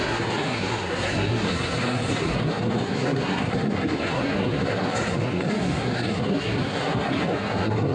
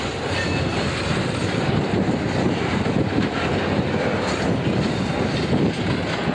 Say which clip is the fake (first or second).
first